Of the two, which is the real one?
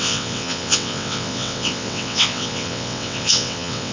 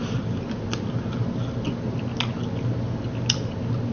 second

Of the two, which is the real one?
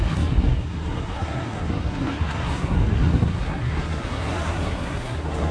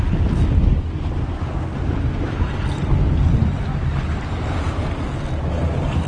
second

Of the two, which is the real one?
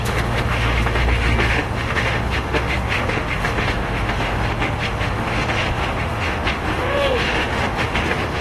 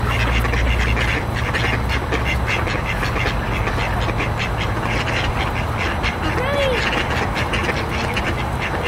second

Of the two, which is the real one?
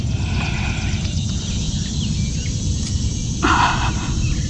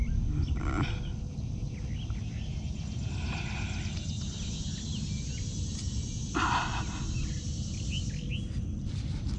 second